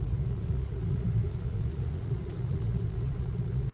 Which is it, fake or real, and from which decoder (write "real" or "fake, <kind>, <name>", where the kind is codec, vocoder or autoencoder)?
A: fake, vocoder, Vocos